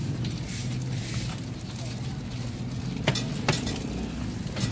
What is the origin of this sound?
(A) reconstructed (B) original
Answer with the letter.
B